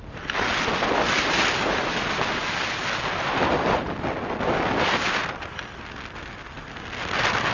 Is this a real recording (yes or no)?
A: yes